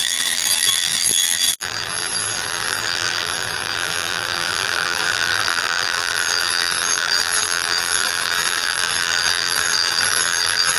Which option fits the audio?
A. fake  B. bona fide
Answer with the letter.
A